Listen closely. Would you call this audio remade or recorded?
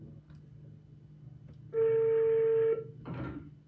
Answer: recorded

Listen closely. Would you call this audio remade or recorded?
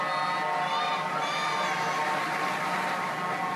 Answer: recorded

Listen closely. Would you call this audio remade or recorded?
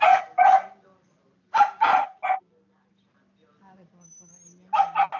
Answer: recorded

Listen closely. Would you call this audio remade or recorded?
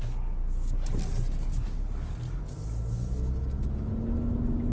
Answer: recorded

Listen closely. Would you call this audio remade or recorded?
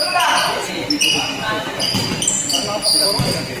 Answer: recorded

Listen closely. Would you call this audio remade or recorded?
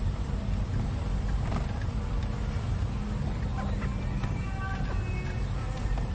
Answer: recorded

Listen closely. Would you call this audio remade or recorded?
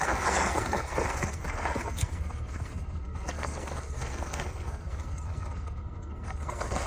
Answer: remade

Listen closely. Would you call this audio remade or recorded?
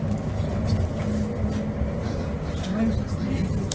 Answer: recorded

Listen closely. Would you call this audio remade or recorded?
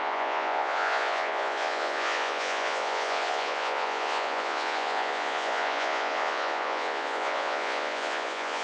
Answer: remade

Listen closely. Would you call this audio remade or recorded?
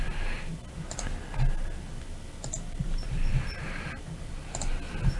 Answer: recorded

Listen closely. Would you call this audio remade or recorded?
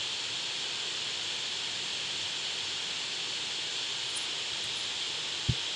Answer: recorded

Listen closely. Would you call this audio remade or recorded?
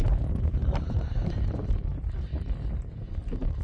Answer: recorded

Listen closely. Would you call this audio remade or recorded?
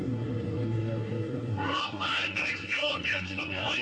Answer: remade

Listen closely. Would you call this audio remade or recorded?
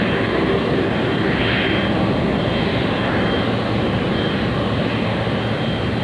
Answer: recorded